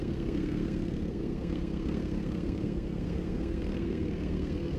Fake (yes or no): yes